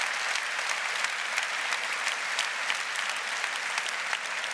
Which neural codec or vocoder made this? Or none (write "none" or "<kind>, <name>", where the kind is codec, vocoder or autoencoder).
none